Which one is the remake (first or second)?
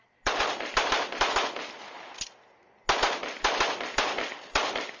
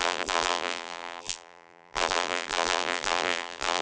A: second